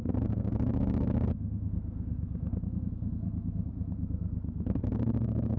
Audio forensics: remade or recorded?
remade